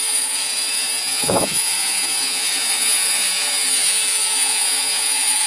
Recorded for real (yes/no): no